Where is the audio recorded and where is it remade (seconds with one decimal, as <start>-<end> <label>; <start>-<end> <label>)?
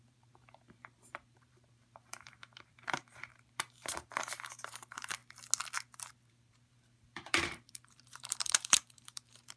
0.0-5.2 remade; 5.2-6.3 recorded; 6.3-9.6 remade